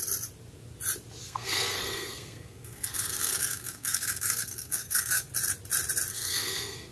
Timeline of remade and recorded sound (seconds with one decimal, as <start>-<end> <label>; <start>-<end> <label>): 0.0-1.2 recorded; 1.2-5.3 remade; 5.3-6.1 recorded; 6.1-6.9 remade